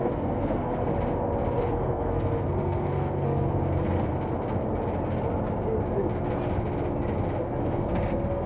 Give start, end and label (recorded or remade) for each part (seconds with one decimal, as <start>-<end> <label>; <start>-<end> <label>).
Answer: 0.0-0.9 remade; 0.9-1.6 recorded; 1.6-4.1 remade; 4.1-7.6 recorded; 7.6-8.5 remade